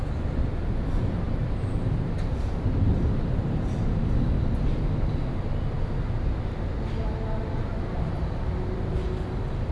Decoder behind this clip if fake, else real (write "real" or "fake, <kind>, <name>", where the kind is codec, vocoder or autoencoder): real